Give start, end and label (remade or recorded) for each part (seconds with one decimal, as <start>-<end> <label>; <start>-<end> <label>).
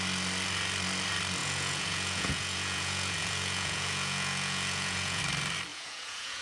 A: 0.0-1.4 recorded; 1.4-5.2 remade; 5.2-5.7 recorded; 5.7-6.4 remade